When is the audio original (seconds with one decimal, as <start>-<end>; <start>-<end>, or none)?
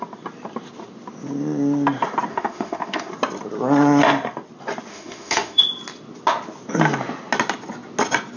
0.0-2.3; 3.1-4.9; 5.6-8.4